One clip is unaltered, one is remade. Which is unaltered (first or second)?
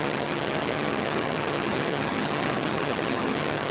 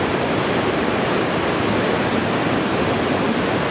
second